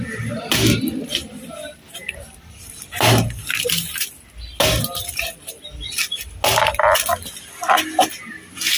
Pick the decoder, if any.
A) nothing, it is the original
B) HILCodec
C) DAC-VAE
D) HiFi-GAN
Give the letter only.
A